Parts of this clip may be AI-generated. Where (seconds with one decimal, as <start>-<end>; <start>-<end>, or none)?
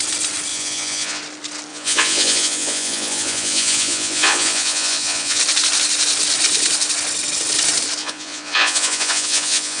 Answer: 0.5-1.2; 1.7-5.4; 8.0-9.8